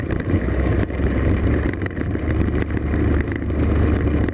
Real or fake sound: fake